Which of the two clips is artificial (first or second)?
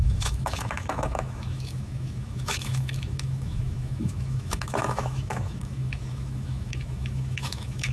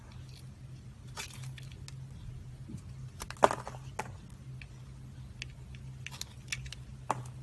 first